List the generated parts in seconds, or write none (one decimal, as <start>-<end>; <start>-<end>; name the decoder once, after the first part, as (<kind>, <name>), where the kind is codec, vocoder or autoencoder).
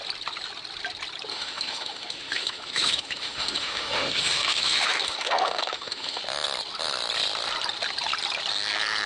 1.3-6.2 (autoencoder, DAC-VAE)